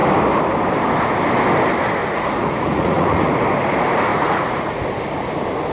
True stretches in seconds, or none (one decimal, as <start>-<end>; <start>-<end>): 0.0-2.0; 3.3-4.1; 4.8-5.7